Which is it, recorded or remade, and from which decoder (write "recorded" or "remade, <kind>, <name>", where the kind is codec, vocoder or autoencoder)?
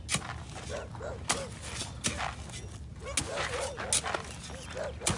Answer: recorded